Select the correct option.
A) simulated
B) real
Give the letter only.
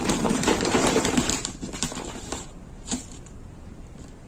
A